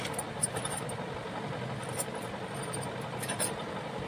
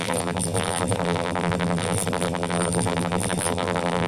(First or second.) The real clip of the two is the first